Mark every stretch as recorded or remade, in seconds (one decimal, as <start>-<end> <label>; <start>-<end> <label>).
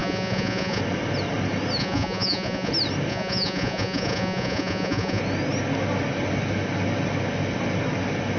0.0-0.8 remade; 0.8-1.8 recorded; 1.8-2.7 remade; 2.7-3.1 recorded; 3.1-5.2 remade; 5.2-8.4 recorded